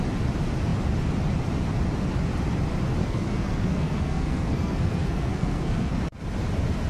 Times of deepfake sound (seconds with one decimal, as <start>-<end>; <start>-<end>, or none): 3.0-6.0